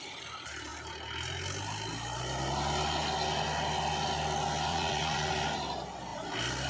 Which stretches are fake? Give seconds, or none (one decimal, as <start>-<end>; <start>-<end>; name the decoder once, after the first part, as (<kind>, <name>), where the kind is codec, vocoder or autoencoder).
4.7-5.3 (vocoder, Vocos)